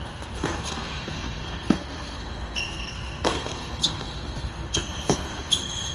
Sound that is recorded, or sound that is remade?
remade